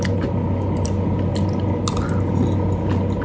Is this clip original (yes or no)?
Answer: yes